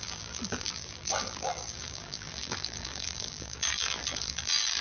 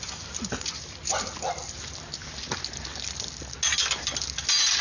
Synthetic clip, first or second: first